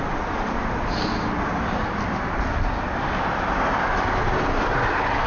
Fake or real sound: real